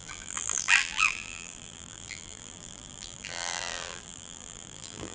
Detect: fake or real fake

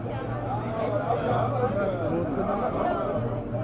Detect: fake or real real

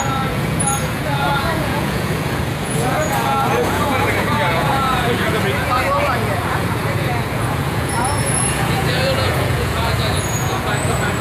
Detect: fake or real fake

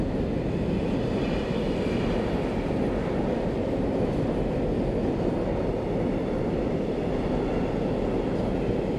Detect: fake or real real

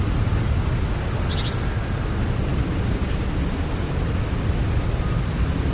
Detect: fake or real real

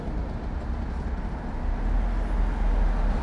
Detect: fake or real real